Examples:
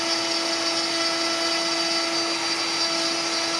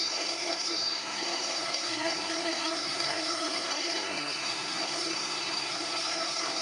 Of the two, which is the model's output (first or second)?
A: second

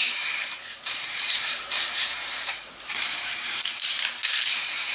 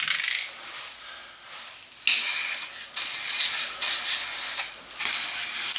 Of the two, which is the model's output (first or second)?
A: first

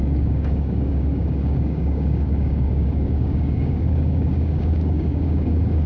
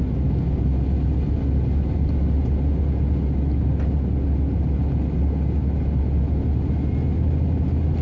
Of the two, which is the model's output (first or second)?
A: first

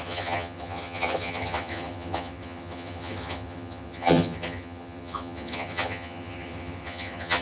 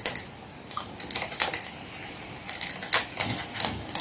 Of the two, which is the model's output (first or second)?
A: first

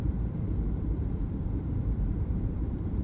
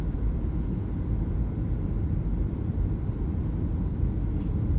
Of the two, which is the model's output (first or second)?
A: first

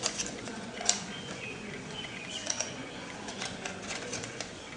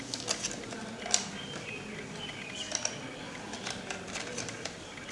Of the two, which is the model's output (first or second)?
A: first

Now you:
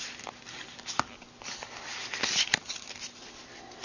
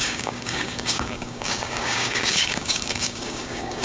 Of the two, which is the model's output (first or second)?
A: second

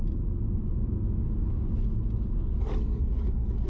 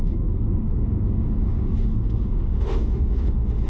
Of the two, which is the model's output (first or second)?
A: second